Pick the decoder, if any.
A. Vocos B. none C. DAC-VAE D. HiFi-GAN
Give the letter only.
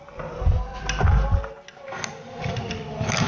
B